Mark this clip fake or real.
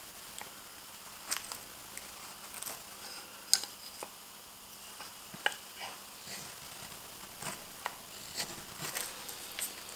real